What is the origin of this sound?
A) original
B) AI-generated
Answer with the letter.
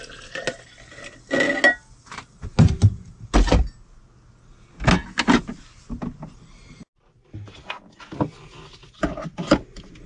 A